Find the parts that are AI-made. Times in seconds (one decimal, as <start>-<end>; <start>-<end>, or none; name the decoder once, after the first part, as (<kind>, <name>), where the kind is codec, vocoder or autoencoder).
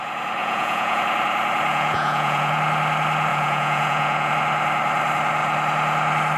0.4-1.0 (vocoder, Vocos); 1.7-2.5; 3.3-4.3